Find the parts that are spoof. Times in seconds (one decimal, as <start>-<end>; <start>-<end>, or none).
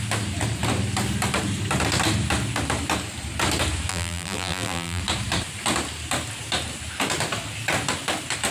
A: 3.9-5.0